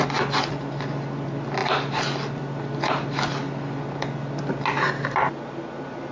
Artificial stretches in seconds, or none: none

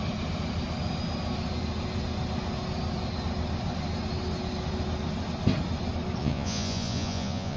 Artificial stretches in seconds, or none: 6.2-7.6

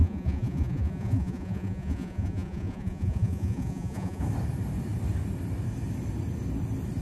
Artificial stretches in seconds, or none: 0.0-4.2